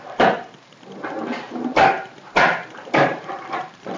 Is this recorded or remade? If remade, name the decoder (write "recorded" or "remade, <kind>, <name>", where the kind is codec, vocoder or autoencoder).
remade, vocoder, BigVGAN v2